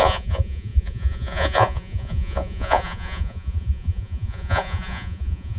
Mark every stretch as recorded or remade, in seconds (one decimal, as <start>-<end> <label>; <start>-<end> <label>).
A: 0.0-5.6 remade